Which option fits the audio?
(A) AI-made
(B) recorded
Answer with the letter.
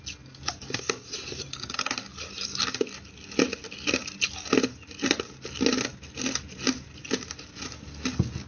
B